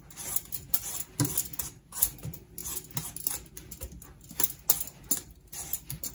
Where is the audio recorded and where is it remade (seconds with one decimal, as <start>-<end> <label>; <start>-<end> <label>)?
0.0-6.1 recorded